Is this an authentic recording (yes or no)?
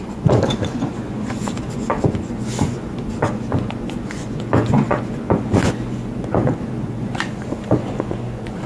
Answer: no